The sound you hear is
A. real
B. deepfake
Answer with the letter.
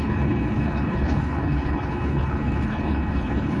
B